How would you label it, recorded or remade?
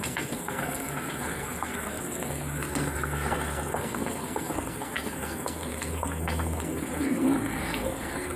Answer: remade